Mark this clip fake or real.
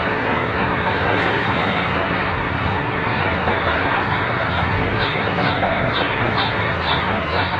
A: fake